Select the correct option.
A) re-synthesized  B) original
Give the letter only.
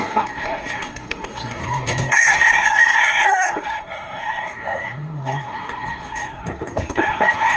A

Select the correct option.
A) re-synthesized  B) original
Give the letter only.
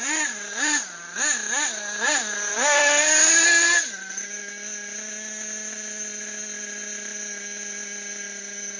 B